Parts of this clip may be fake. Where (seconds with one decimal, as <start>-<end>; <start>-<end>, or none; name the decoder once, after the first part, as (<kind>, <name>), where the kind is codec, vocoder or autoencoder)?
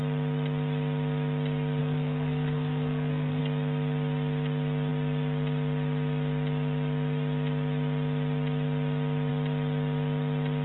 1.8-3.4 (codec, SNAC)